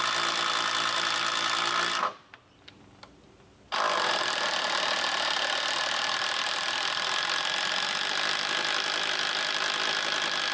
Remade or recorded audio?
recorded